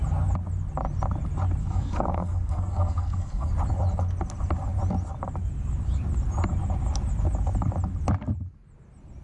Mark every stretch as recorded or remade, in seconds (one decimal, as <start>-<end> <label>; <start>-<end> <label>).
0.0-1.6 recorded; 1.6-3.5 remade; 3.5-9.2 recorded